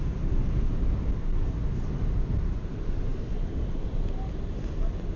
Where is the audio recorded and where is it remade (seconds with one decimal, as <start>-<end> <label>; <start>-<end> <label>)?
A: 0.0-5.2 recorded